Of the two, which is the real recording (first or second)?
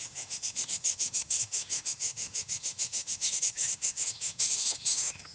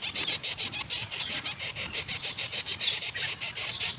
second